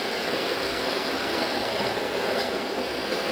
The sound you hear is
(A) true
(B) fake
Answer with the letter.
B